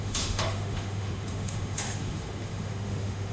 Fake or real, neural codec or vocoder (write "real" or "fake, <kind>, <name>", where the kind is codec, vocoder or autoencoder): fake, autoencoder, DAC-VAE